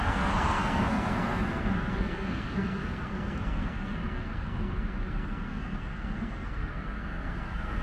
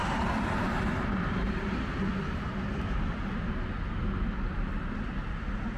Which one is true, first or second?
second